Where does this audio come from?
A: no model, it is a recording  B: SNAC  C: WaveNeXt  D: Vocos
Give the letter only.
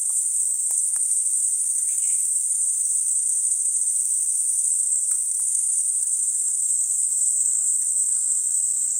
B